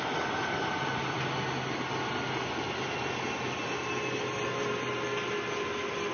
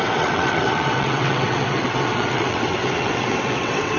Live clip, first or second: first